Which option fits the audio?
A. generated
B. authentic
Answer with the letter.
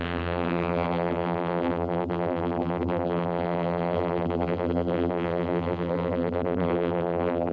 A